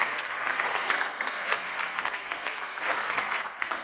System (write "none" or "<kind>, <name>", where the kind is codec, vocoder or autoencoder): codec, SNAC